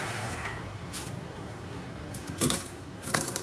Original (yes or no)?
no